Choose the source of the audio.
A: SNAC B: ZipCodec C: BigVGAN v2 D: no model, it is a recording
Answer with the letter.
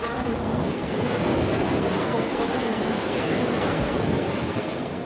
A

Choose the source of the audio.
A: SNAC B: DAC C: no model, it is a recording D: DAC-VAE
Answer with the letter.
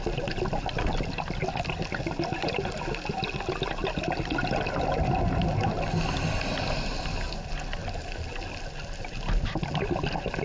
C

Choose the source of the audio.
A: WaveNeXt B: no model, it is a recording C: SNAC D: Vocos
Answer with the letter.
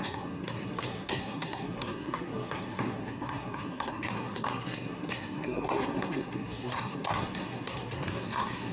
C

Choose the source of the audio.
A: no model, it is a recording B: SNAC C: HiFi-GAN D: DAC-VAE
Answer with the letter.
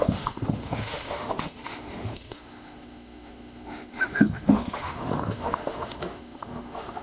D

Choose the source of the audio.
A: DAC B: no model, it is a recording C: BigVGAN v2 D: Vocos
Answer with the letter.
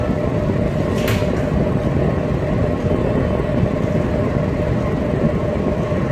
B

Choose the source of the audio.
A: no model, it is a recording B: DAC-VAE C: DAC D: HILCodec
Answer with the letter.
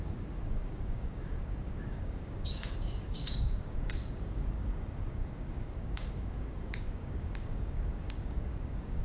C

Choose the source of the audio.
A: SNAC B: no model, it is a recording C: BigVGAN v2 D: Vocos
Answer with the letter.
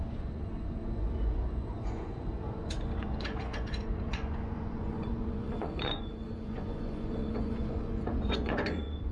D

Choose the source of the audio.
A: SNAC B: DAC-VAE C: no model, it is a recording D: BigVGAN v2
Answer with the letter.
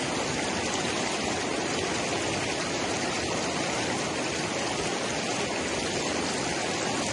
C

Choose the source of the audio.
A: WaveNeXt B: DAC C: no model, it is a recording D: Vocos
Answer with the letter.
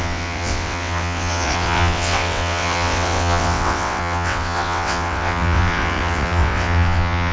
A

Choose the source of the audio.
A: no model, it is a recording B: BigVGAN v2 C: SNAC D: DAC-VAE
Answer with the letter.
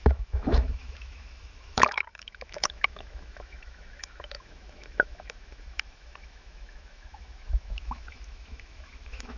D